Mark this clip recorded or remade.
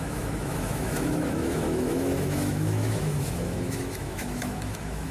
remade